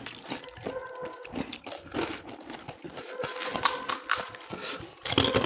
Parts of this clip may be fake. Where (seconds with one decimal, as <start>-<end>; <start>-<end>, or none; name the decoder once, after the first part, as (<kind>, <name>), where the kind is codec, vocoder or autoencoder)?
none